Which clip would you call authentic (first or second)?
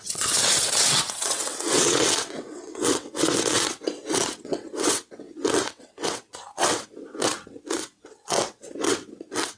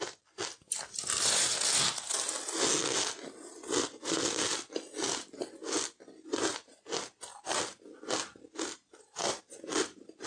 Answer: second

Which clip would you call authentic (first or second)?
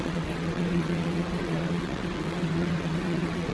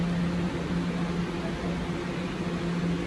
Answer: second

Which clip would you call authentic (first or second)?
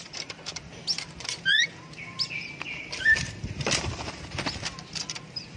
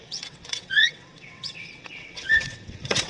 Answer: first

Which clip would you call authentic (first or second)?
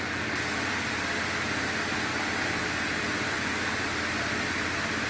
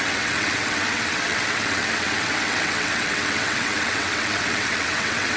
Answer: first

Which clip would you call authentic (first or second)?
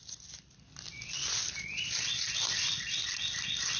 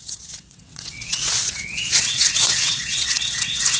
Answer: first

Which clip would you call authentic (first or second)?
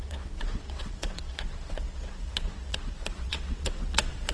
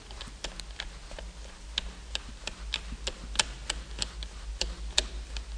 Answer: second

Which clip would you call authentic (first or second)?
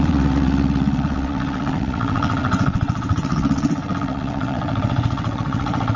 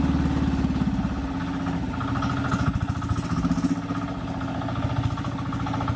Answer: second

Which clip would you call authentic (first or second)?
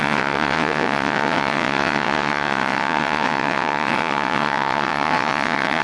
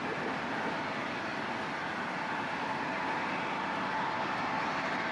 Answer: second